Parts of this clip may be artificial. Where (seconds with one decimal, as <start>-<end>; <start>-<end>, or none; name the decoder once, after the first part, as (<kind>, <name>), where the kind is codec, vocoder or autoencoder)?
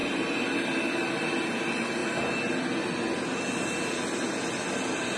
none